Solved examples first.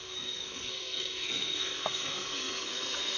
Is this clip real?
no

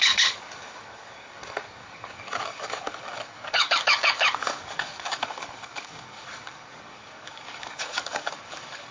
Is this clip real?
no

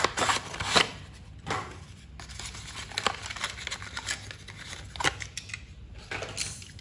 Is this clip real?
yes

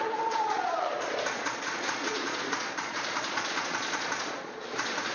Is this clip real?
no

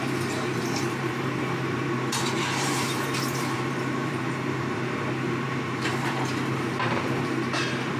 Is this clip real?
no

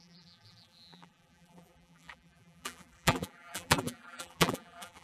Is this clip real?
no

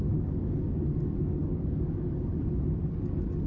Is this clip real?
no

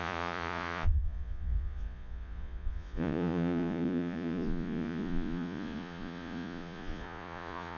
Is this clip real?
no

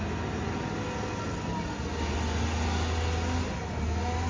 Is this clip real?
yes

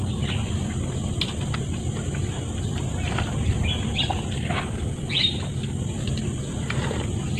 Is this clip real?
yes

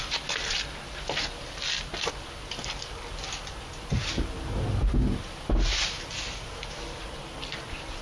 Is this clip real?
yes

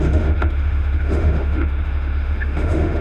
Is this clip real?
no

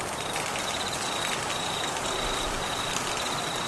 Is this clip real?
yes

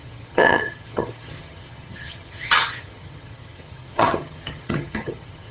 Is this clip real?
no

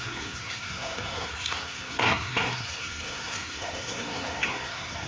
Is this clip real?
no